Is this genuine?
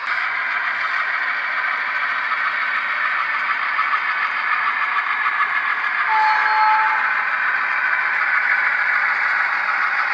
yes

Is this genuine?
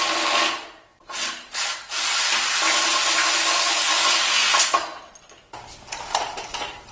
yes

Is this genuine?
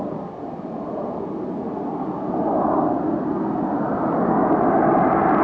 yes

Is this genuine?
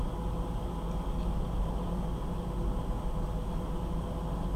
yes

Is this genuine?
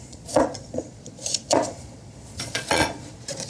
no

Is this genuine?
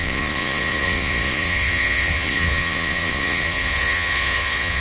no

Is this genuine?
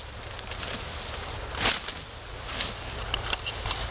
yes